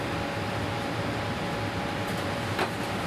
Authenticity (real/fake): real